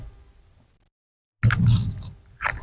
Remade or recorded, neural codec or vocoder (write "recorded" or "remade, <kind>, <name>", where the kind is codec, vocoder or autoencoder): recorded